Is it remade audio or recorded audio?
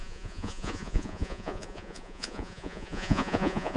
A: remade